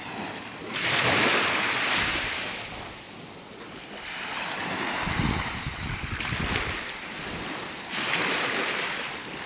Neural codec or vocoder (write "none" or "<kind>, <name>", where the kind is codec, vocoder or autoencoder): none